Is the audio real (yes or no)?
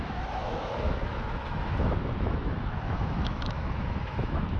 no